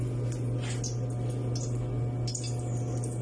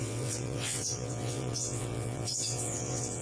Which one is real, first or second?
first